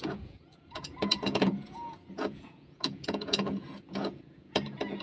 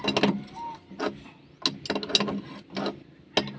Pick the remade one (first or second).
first